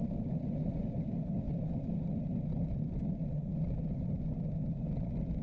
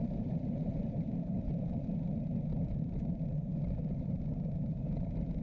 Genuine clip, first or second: first